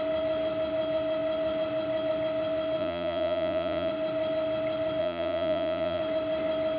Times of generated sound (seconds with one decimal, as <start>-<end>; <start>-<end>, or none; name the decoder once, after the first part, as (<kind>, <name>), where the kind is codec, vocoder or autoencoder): 2.8-3.9 (vocoder, Vocos); 5.0-6.0